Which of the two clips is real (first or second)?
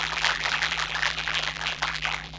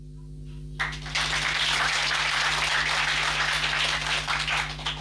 second